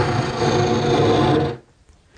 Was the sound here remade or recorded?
recorded